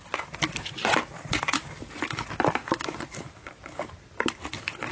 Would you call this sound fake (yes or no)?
no